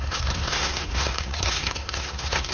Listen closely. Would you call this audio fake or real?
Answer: fake